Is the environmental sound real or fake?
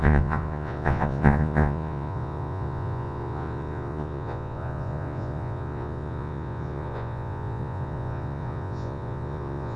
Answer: fake